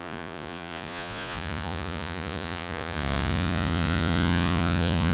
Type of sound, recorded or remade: remade